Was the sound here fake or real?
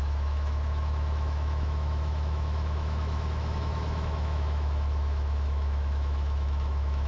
fake